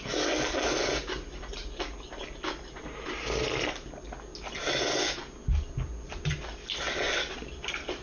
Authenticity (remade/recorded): recorded